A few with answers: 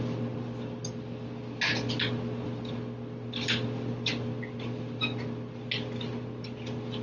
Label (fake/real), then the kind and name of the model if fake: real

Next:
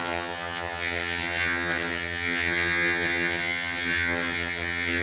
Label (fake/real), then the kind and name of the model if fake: fake, vocoder, HiFi-GAN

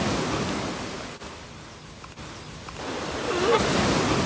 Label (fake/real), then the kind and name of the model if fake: real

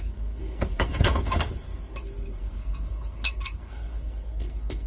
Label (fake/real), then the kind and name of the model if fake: fake, codec, SNAC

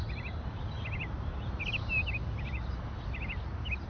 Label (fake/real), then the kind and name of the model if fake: real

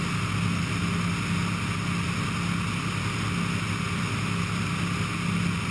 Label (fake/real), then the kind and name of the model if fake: real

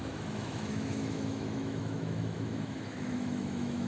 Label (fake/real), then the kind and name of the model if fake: fake, autoencoder, DAC-VAE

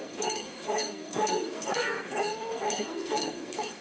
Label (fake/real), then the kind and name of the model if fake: fake, codec, SNAC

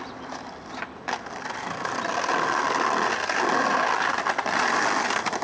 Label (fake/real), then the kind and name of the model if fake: real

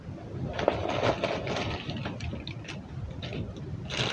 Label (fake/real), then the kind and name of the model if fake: real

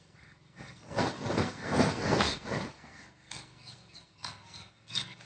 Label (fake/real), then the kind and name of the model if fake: fake, codec, SNAC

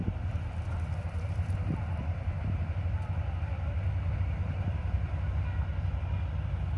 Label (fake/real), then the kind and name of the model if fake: real